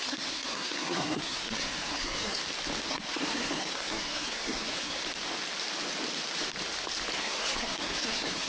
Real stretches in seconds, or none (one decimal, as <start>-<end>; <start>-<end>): 2.4-2.9; 5.0-7.2